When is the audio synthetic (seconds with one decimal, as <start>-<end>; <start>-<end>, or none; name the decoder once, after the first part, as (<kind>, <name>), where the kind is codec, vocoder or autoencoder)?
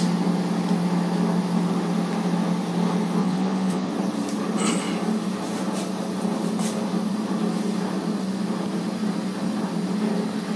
3.2-3.9 (vocoder, WaveNeXt)